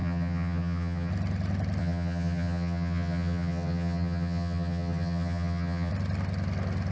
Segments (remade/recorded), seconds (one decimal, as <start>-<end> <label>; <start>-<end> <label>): 0.0-1.1 remade; 1.1-1.8 recorded; 1.8-5.9 remade; 5.9-6.9 recorded